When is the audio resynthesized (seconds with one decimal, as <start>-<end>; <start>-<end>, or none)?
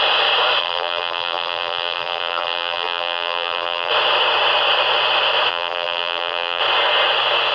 0.6-3.9; 5.5-6.6